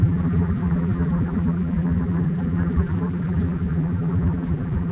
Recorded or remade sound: remade